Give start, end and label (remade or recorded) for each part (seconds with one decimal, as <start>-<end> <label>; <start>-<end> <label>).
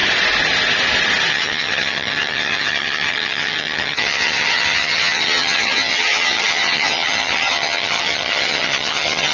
0.0-1.3 recorded; 1.3-9.3 remade